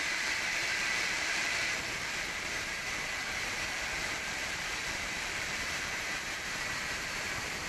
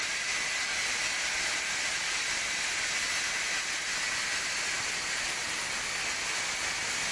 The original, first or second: second